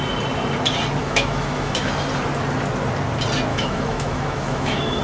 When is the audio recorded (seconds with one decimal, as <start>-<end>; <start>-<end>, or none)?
0.0-1.0; 1.9-3.5